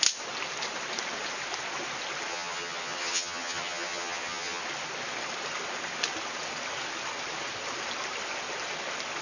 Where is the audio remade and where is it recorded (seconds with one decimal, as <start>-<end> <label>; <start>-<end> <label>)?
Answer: 0.0-2.3 recorded; 2.3-4.6 remade; 4.6-9.2 recorded